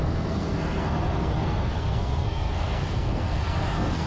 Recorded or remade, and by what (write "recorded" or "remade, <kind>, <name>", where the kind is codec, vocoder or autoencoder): remade, codec, SNAC